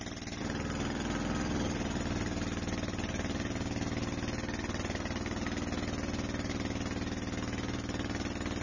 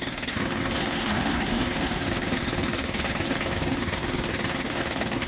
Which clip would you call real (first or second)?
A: first